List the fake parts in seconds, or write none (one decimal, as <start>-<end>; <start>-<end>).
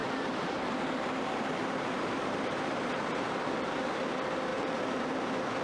0.0-3.4; 4.5-5.0